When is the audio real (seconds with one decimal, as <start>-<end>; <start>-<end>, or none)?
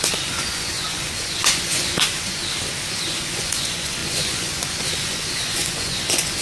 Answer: 2.4-2.9